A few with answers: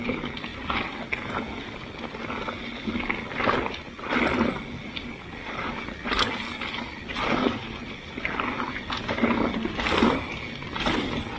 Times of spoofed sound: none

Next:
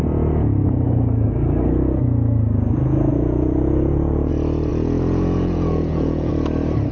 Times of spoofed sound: 3.1-4.3 (vocoder, Vocos); 4.7-6.3

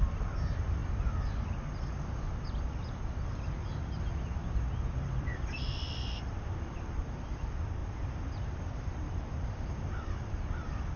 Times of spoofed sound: 0.0-0.8 (vocoder, BigVGAN v2); 4.9-11.0

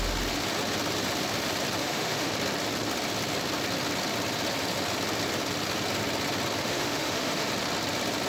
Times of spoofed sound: 1.8-2.3 (autoencoder, DAC-VAE); 6.6-7.5

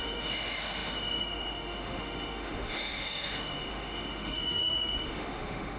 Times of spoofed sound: 0.0-5.8 (autoencoder, DAC-VAE)

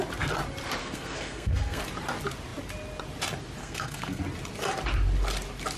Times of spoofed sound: 0.8-1.8 (codec, SNAC); 3.6-4.2

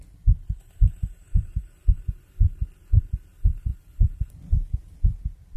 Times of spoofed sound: 0.4-1.9 (vocoder, BigVGAN v2)